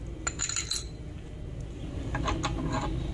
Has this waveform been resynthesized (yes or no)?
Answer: no